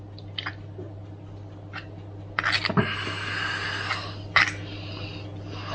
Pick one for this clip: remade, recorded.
recorded